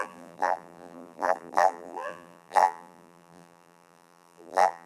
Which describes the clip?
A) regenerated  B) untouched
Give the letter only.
A